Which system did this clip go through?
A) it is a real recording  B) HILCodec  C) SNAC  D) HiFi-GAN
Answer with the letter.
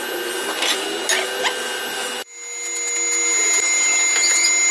A